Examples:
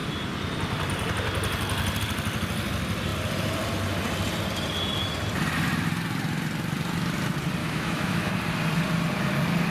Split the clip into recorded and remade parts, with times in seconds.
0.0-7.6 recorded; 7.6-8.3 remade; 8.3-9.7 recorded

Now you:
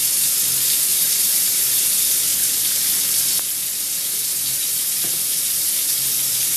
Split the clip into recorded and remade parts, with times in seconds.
0.0-2.3 recorded; 2.3-2.9 remade; 2.9-4.6 recorded; 4.6-6.6 remade

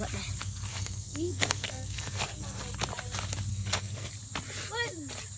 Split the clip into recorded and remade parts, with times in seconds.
0.0-0.4 recorded; 0.4-2.6 remade; 2.6-3.5 recorded; 3.5-4.1 remade; 4.1-5.4 recorded

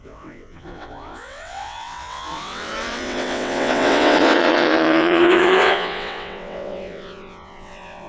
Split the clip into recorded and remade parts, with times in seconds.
0.0-8.1 remade

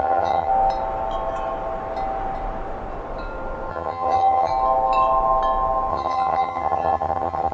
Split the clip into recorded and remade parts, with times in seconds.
0.0-0.5 remade; 0.5-3.7 recorded; 3.7-4.5 remade; 4.5-5.9 recorded; 5.9-7.5 remade